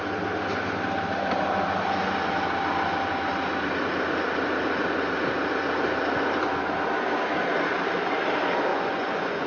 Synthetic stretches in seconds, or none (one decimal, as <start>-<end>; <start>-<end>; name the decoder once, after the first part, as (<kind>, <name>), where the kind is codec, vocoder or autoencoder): 8.7-9.5 (vocoder, Vocos)